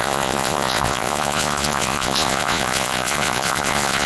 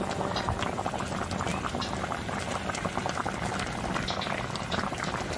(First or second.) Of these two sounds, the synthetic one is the first